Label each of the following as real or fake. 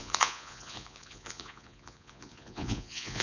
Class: fake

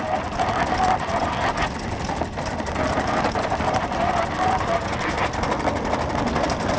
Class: fake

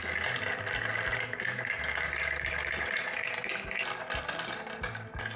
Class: real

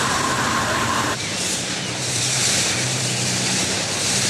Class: fake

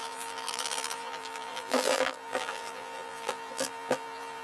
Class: fake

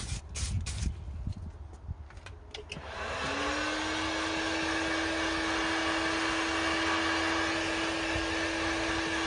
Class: real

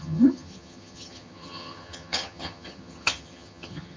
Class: fake